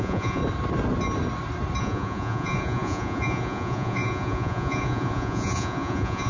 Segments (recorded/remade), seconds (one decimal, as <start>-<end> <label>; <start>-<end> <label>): 0.0-0.4 remade; 0.4-1.8 recorded; 1.8-6.3 remade